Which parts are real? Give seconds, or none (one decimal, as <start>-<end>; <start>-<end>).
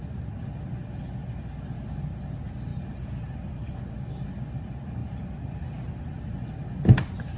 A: 0.0-2.7; 3.8-5.0; 6.2-7.4